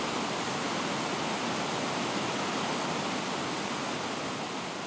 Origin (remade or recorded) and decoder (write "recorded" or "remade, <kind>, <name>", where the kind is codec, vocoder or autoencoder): recorded